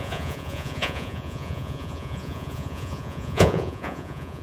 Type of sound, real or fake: fake